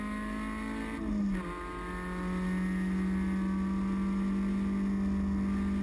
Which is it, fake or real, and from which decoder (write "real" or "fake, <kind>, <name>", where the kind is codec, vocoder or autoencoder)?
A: real